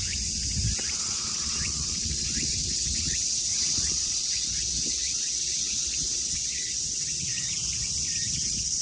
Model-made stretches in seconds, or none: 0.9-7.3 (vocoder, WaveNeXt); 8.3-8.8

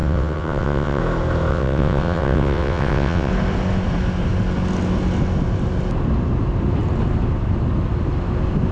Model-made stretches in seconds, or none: 0.0-1.0 (vocoder, WaveNeXt); 1.5-3.3

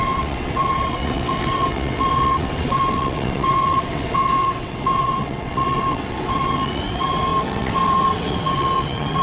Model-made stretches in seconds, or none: 0.0-9.2 (vocoder, WaveNeXt)